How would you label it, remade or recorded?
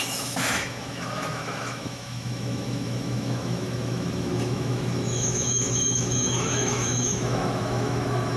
remade